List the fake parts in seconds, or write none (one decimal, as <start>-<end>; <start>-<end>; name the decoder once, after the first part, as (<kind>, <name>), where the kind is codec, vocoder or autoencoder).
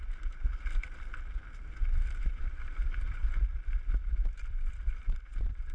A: 0.0-0.8 (vocoder, BigVGAN v2); 2.4-3.2; 4.3-5.7